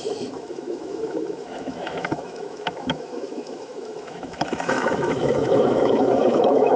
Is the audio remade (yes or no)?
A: yes